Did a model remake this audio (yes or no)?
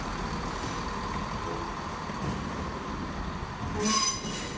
no